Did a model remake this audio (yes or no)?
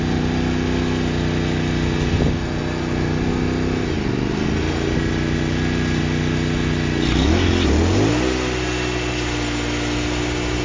no